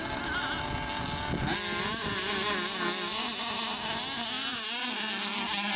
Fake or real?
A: real